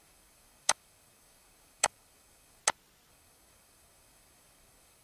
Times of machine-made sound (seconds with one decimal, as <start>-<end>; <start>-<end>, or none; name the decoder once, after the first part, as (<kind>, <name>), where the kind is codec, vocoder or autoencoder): 0.0-2.6 (codec, DAC); 3.1-5.0

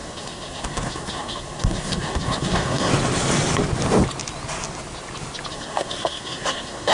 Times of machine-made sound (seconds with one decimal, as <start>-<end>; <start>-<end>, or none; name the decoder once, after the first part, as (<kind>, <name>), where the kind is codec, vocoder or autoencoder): 0.0-2.9 (codec, SNAC); 5.5-6.9

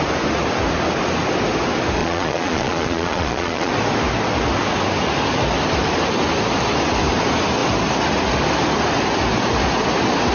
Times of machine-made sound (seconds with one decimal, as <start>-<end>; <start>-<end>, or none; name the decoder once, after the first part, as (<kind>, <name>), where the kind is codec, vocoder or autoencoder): 2.0-3.7 (vocoder, Vocos)

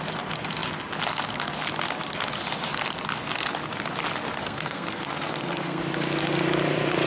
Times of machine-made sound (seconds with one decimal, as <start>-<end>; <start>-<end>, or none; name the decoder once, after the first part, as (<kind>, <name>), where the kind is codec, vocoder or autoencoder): 4.4-5.8 (codec, SNAC)

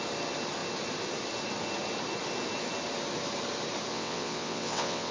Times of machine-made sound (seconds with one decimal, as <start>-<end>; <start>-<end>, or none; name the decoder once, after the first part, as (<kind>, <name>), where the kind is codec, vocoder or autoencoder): 3.9-5.1 (vocoder, WaveNeXt)

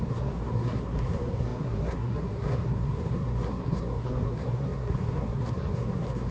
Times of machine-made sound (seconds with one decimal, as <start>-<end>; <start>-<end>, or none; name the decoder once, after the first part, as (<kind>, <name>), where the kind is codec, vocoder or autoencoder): 0.0-6.3 (codec, SNAC)

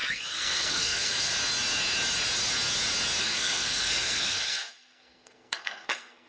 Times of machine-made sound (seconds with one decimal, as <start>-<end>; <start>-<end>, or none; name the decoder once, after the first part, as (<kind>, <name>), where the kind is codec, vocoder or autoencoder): 0.0-1.3 (codec, SNAC); 3.2-6.3